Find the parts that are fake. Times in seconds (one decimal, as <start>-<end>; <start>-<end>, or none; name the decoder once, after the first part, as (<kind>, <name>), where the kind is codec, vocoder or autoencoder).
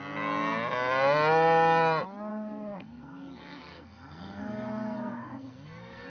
2.3-6.1 (codec, SNAC)